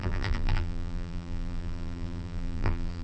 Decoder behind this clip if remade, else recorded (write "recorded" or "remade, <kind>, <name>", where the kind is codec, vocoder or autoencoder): remade, vocoder, BigVGAN v2